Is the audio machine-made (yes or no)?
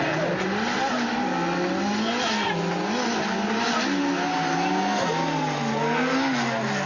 no